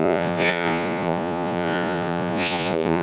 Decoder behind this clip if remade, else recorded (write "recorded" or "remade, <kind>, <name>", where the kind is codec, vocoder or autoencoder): remade, vocoder, Vocos